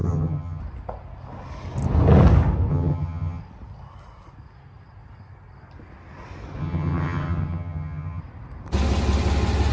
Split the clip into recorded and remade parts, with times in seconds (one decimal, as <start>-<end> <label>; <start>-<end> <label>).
0.0-0.6 remade; 0.6-2.7 recorded; 2.7-3.4 remade; 3.4-6.6 recorded; 6.6-8.2 remade; 8.2-9.7 recorded